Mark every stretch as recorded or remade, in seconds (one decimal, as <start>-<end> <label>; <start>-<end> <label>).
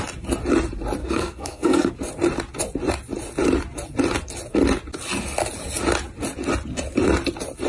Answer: 0.0-1.0 recorded; 1.0-1.9 remade; 1.9-7.7 recorded